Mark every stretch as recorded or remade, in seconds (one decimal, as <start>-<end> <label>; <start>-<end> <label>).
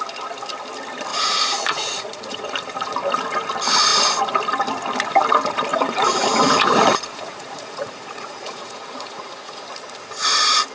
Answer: 0.0-1.1 recorded; 1.1-2.6 remade; 2.6-5.7 recorded; 5.7-9.6 remade; 9.6-10.7 recorded